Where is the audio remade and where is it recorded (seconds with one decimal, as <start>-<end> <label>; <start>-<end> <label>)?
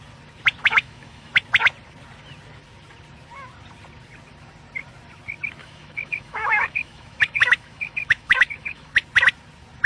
0.0-0.6 recorded; 0.6-1.3 remade; 1.3-5.6 recorded; 5.6-8.9 remade; 8.9-9.9 recorded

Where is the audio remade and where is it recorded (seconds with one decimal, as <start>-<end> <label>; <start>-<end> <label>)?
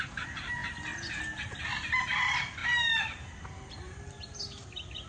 0.0-5.1 recorded